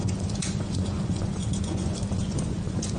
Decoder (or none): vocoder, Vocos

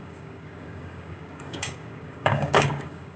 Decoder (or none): codec, DAC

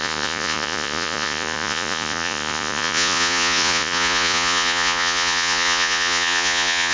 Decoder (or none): vocoder, Vocos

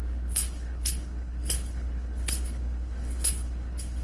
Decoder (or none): codec, HILCodec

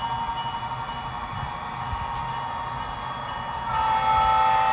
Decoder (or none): none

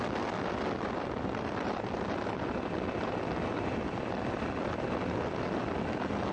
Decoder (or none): none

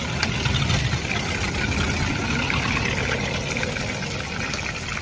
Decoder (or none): none